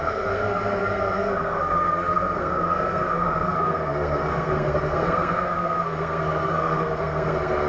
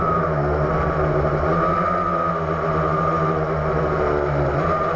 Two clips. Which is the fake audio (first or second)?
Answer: first